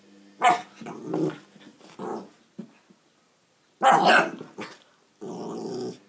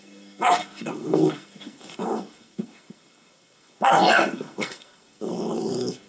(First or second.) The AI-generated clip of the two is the second